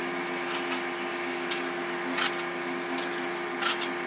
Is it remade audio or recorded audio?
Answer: recorded